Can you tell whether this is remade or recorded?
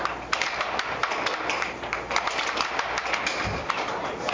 recorded